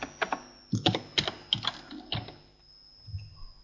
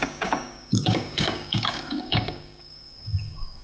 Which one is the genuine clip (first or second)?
first